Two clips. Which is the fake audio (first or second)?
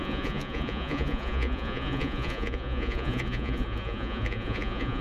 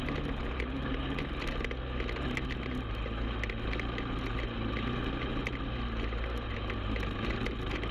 first